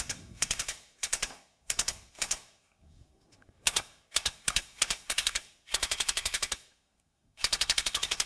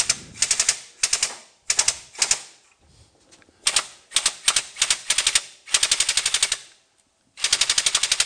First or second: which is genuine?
second